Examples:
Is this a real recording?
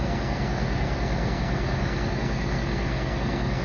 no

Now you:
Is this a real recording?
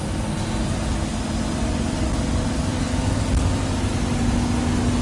yes